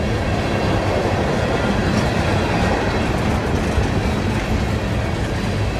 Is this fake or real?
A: real